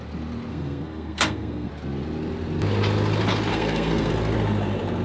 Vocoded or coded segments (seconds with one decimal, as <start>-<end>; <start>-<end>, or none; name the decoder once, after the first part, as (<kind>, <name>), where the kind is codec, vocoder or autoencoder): 0.5-1.7 (codec, SNAC); 3.5-4.1